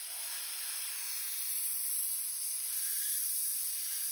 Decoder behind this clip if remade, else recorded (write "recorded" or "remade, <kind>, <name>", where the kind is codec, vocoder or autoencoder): recorded